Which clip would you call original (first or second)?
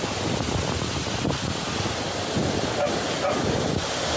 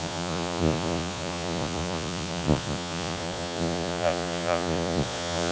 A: first